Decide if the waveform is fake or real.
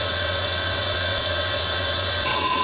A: fake